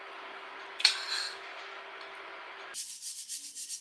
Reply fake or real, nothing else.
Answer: real